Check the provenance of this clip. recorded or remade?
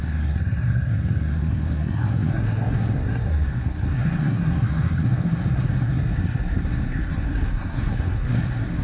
remade